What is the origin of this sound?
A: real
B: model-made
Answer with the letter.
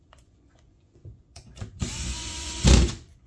B